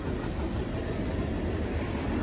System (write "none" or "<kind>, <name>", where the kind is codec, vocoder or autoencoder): none